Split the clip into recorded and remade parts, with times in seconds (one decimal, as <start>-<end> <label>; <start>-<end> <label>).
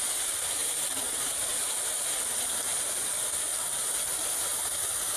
0.0-0.6 recorded; 0.6-2.2 remade; 2.2-5.2 recorded